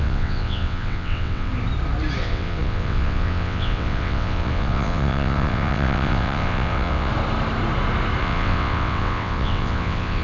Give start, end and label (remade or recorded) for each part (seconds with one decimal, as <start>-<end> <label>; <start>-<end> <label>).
0.0-1.5 remade; 1.5-2.2 recorded; 2.2-7.1 remade; 7.1-8.2 recorded; 8.2-10.2 remade